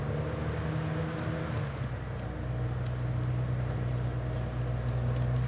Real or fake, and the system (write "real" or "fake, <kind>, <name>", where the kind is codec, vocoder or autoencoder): real